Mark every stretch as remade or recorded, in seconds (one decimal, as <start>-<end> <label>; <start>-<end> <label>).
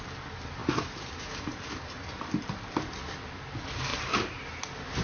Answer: 0.0-0.6 recorded; 0.6-2.9 remade; 2.9-3.9 recorded; 3.9-4.6 remade; 4.6-5.0 recorded